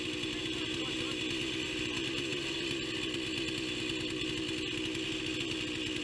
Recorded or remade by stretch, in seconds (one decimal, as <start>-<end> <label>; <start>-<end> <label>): 0.0-6.0 recorded